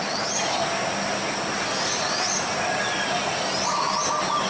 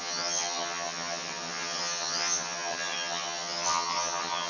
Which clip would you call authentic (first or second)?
first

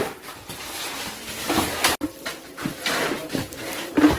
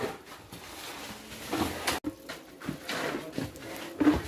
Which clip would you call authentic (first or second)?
second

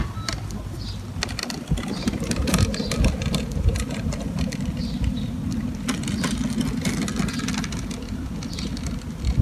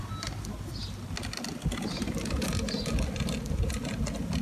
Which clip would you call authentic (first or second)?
second